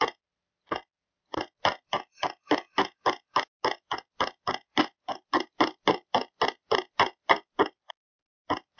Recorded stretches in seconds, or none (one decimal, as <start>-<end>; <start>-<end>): 0.0-8.8